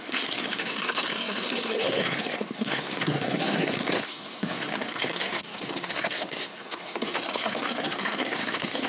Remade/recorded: remade